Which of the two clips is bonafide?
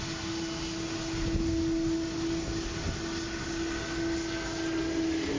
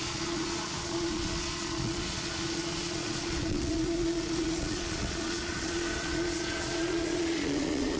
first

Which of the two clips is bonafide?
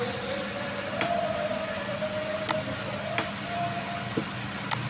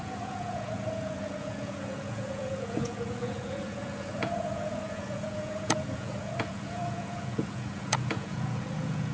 first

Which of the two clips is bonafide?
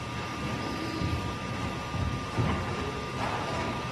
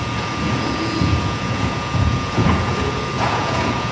first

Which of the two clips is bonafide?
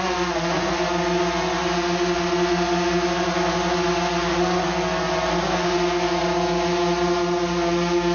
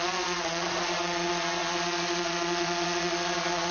first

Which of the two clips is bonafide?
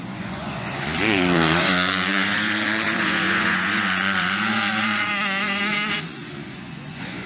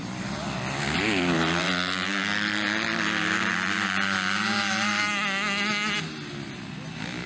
second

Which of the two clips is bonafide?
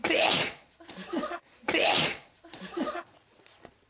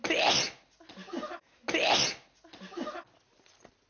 second